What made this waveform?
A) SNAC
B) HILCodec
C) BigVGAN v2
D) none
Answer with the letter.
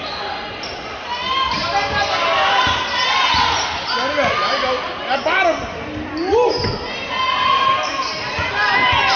D